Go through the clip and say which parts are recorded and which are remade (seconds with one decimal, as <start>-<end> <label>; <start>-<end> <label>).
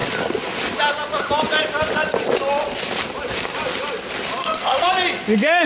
0.0-4.4 recorded; 4.4-4.9 remade; 4.9-5.7 recorded